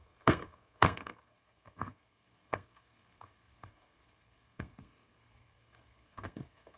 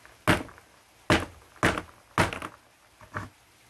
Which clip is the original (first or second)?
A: second